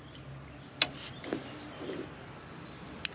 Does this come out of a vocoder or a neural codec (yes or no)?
no